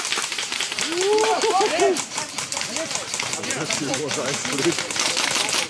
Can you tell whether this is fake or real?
real